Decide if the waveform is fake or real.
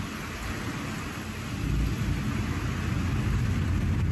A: real